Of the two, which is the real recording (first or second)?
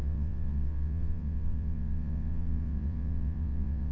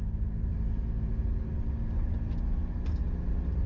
second